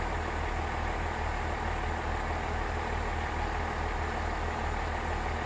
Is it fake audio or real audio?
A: real